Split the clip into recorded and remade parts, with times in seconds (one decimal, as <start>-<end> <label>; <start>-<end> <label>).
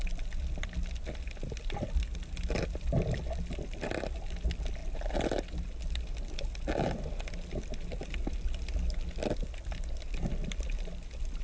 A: 0.0-11.4 recorded